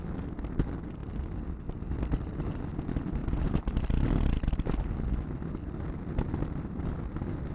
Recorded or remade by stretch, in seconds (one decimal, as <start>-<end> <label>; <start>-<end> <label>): 0.0-3.2 recorded; 3.2-5.3 remade; 5.3-7.5 recorded